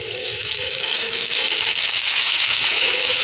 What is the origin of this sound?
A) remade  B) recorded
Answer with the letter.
A